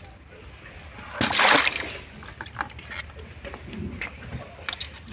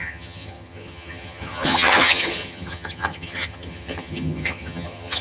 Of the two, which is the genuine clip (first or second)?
first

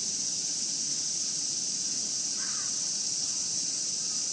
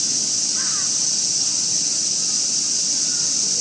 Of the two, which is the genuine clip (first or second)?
second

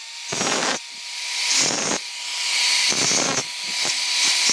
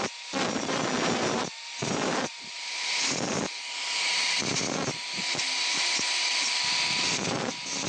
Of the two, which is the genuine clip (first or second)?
first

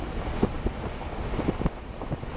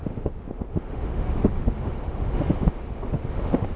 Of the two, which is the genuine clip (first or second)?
first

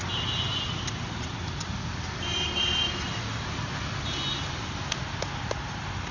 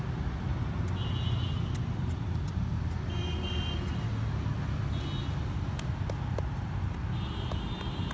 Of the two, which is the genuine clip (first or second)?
second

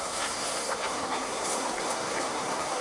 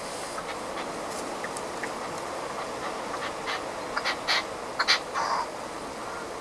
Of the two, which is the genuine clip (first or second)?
second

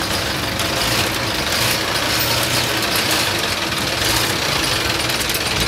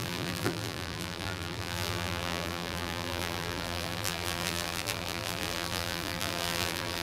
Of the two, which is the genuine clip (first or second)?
first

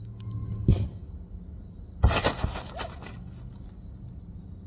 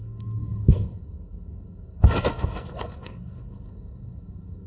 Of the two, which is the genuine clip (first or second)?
first